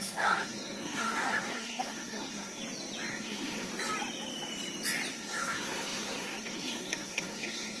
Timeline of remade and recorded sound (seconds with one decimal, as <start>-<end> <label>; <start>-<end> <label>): 0.0-2.6 remade; 2.6-3.1 recorded; 3.1-3.7 remade; 3.7-5.1 recorded; 5.1-7.8 remade